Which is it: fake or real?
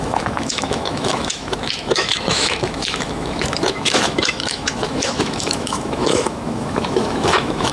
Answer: fake